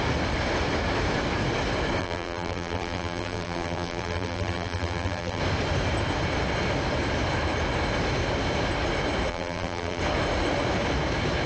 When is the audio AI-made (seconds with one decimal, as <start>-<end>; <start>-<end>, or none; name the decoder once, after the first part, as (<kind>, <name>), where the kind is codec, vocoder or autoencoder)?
2.0-5.4 (vocoder, BigVGAN v2); 9.3-10.0